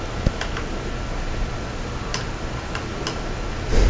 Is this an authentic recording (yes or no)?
yes